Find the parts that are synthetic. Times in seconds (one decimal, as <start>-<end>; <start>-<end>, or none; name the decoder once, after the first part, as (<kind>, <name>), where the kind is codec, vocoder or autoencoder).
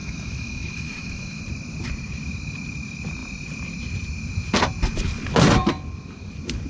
0.0-1.4 (autoencoder, DAC-VAE)